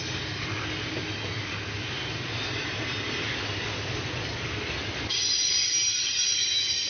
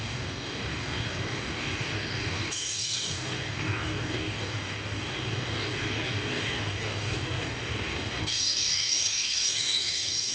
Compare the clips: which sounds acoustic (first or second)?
first